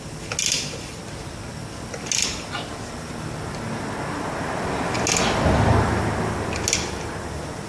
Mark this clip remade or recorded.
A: recorded